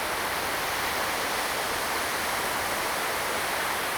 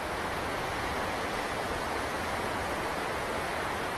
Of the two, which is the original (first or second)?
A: first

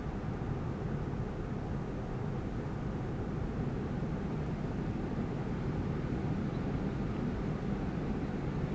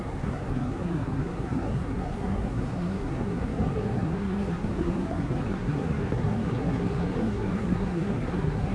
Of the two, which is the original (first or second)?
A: first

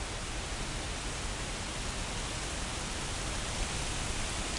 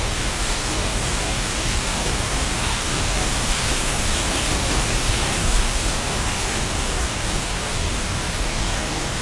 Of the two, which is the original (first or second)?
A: first